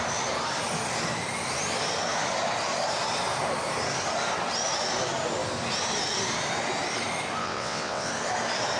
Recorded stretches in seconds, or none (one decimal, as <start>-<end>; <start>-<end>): 0.0-7.4; 8.1-8.8